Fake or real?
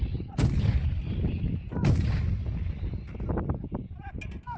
real